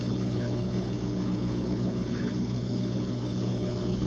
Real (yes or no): no